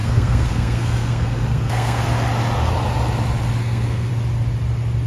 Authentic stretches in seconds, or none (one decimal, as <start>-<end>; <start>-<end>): 2.0-3.6; 4.1-5.1